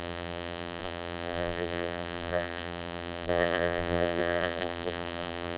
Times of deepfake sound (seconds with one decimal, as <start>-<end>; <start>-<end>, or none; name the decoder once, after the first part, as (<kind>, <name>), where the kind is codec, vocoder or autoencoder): 0.0-5.6 (vocoder, BigVGAN v2)